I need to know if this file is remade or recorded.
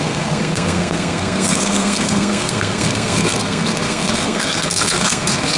remade